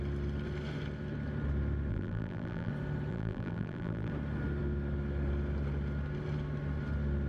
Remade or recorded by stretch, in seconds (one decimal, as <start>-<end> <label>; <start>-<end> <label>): 0.0-1.9 recorded; 1.9-2.7 remade; 2.7-3.1 recorded; 3.1-4.1 remade; 4.1-7.3 recorded